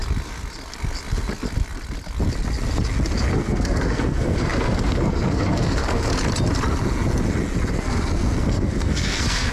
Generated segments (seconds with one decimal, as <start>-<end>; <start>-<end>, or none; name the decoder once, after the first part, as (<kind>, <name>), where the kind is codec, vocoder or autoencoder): 3.3-6.1 (codec, SNAC); 7.7-9.5